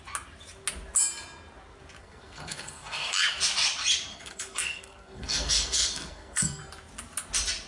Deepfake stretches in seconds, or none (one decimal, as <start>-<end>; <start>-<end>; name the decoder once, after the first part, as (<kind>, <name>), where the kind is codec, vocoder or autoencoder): 2.0-3.2 (codec, SNAC); 4.1-6.6